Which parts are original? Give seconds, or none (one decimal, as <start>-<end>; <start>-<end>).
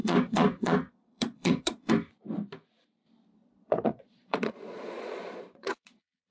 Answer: 1.9-3.4